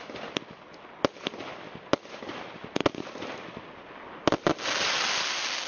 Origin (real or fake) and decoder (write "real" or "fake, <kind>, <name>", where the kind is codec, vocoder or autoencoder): real